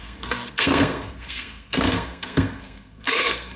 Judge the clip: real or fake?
fake